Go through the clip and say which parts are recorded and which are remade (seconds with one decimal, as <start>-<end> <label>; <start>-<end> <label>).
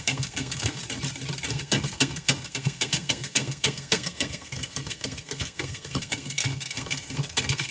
0.0-0.8 remade; 0.8-1.5 recorded; 1.5-7.7 remade